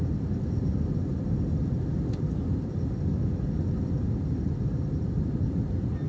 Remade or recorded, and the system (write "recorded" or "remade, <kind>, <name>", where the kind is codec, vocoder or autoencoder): recorded